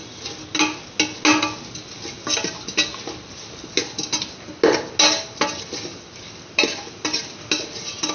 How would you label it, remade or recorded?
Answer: recorded